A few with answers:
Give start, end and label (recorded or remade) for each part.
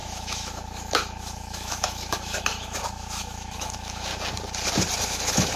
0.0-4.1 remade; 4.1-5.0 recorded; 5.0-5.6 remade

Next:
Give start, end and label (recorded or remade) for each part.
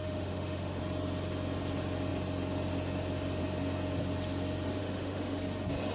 0.0-0.8 remade; 0.8-4.8 recorded; 4.8-5.4 remade; 5.4-5.9 recorded